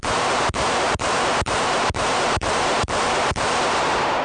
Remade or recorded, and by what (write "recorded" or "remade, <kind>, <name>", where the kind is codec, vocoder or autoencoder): remade, vocoder, BigVGAN v2